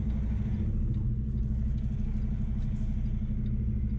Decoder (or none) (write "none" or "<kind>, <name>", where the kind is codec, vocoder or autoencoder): none